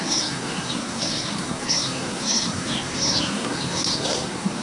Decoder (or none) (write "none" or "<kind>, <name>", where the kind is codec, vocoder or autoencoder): codec, SNAC